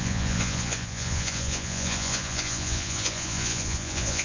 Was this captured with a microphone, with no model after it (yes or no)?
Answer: no